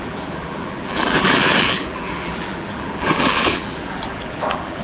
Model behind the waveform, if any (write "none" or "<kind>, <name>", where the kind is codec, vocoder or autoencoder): vocoder, BigVGAN v2